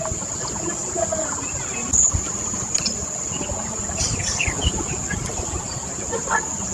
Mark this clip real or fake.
real